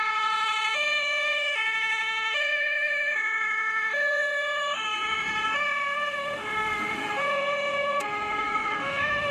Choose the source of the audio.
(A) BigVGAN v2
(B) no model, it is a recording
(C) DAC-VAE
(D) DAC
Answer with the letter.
C